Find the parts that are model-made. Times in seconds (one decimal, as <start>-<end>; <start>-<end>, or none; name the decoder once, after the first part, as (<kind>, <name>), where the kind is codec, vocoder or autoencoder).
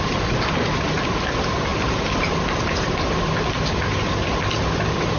none